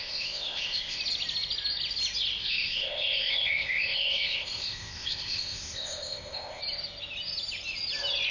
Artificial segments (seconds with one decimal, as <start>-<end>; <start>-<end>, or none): 0.0-1.0; 2.4-6.6